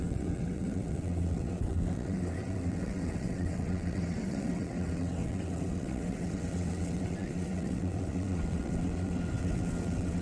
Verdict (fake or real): fake